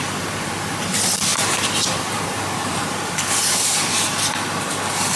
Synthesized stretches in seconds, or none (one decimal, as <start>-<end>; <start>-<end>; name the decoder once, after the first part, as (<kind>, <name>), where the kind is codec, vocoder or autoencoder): 1.3-3.5 (vocoder, BigVGAN v2)